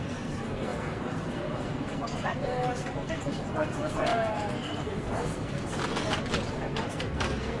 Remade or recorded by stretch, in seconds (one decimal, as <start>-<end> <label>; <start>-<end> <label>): 0.0-5.8 remade; 5.8-6.5 recorded; 6.5-7.6 remade